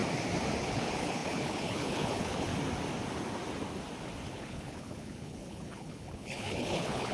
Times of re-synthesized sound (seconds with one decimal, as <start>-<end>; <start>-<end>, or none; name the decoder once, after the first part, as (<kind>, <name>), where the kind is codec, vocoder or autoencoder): 0.6-2.5 (codec, HILCodec); 4.3-7.1